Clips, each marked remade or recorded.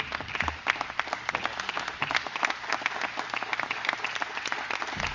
recorded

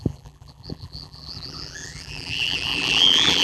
remade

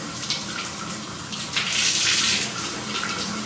remade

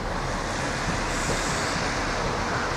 recorded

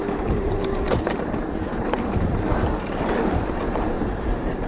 remade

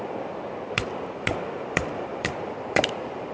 remade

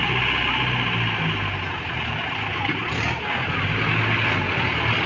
recorded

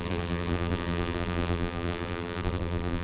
remade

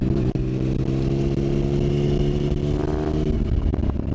recorded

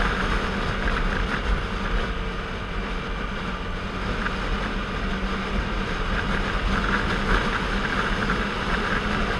recorded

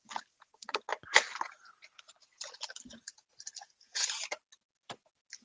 recorded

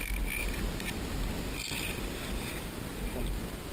recorded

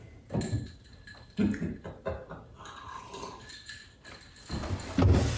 recorded